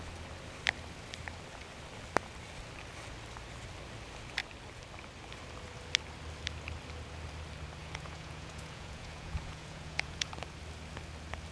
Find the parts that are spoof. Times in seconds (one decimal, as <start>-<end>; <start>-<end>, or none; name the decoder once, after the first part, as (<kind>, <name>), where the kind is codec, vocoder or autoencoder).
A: 7.8-10.3 (vocoder, Vocos)